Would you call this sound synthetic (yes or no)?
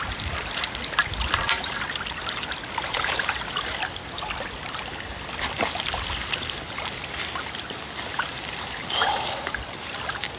yes